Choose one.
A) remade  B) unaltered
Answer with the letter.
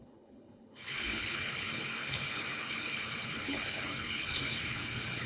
A